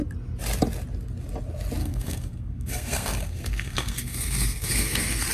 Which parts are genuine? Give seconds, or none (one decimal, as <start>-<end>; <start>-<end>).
0.0-1.8